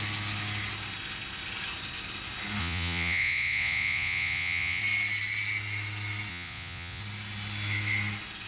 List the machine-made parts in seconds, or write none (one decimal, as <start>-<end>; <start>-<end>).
2.6-4.8; 6.3-7.0